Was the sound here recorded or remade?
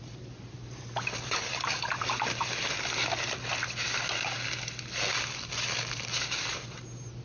recorded